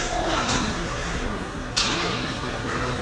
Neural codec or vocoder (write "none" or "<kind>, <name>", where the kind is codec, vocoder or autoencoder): codec, SNAC